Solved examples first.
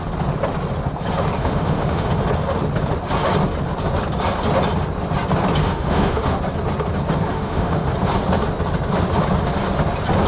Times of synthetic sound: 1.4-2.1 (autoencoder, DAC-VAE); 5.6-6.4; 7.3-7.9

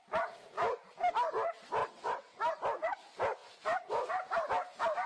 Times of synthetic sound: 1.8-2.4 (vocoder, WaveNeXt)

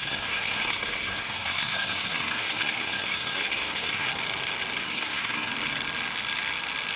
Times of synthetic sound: 0.0-4.1 (codec, SNAC); 4.8-5.5

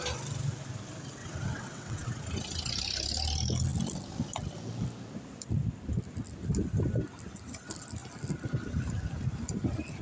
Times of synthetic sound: 1.2-2.1 (vocoder, WaveNeXt)

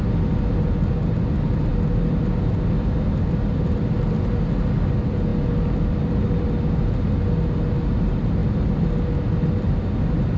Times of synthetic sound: none

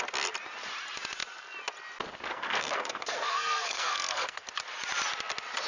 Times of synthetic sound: 2.3-4.5 (codec, SNAC)

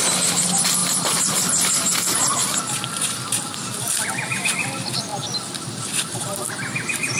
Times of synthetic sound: none